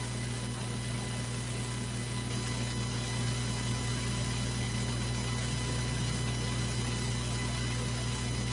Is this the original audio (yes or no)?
yes